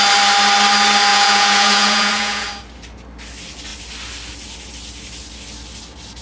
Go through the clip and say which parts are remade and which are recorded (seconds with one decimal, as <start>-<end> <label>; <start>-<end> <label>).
0.0-1.1 recorded; 1.1-2.5 remade; 2.5-6.2 recorded